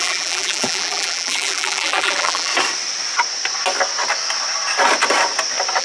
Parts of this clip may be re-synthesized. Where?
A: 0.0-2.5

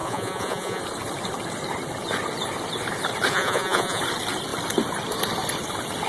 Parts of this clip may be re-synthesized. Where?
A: 0.0-0.8; 3.3-4.0

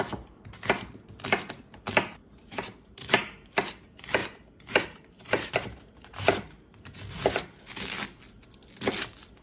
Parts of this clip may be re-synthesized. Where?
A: 2.2-3.5; 4.2-7.6